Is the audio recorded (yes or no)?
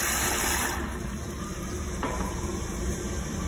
no